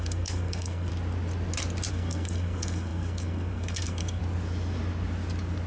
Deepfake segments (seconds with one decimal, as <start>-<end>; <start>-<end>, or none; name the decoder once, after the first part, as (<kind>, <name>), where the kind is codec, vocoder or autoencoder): 0.0-0.9 (codec, SNAC); 1.9-4.2